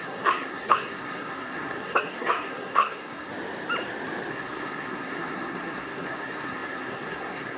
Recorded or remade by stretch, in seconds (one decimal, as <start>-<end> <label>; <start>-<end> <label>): 0.0-3.3 remade; 3.3-4.3 recorded; 4.3-7.6 remade